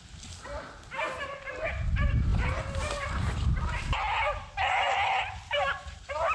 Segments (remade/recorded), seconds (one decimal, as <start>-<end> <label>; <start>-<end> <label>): 0.0-6.3 recorded